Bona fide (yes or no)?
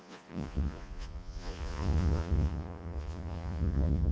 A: no